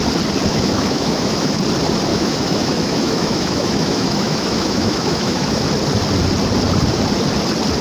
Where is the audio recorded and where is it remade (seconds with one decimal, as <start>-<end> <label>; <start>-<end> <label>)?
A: 0.0-0.5 recorded; 0.5-1.6 remade; 1.6-2.1 recorded; 2.1-5.6 remade; 5.6-7.8 recorded